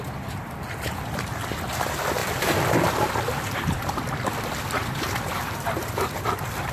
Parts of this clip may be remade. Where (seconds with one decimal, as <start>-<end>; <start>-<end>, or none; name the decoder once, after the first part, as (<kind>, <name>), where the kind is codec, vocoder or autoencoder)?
2.2-6.2 (vocoder, BigVGAN v2)